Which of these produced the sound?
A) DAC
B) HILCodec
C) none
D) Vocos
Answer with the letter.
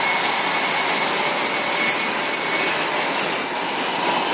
C